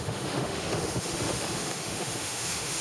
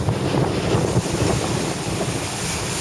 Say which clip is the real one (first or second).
second